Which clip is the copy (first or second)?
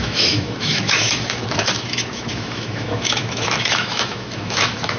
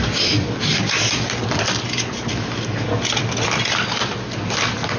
first